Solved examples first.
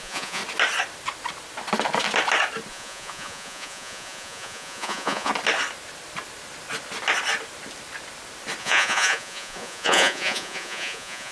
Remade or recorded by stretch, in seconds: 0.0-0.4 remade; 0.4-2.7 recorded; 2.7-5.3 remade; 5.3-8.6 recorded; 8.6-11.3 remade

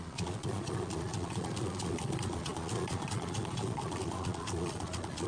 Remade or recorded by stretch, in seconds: 0.0-5.3 remade

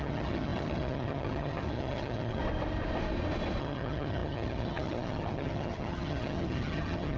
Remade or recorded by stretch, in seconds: 0.0-2.4 remade; 2.4-3.6 recorded; 3.6-7.2 remade

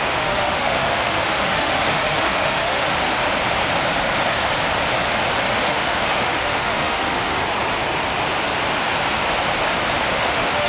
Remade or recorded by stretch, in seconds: 0.0-3.2 remade; 3.2-5.5 recorded; 5.5-7.4 remade; 7.4-10.0 recorded; 10.0-10.7 remade

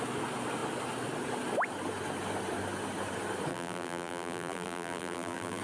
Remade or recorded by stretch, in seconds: 0.0-3.5 recorded; 3.5-5.6 remade

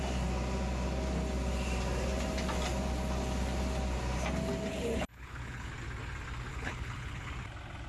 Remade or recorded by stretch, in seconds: 0.0-4.7 recorded; 4.7-5.7 remade; 5.7-6.5 recorded; 6.5-7.3 remade; 7.3-7.9 recorded

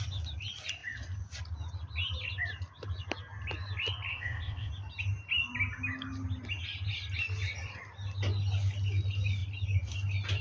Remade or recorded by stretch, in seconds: 0.0-4.1 recorded; 4.1-4.7 remade; 4.7-10.4 recorded